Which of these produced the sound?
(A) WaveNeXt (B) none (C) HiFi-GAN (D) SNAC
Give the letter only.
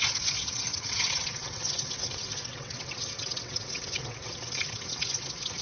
A